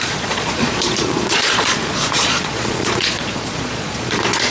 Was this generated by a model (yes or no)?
yes